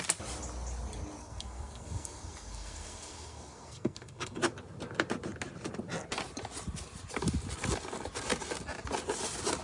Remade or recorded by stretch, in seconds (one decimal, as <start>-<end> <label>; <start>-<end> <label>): 0.0-1.2 recorded; 1.2-4.4 remade; 4.4-9.6 recorded